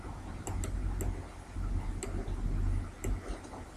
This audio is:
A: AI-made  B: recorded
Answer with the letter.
B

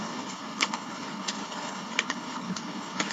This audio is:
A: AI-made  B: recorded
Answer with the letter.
A